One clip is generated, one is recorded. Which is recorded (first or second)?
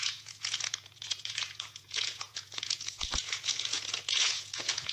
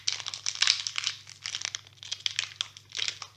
second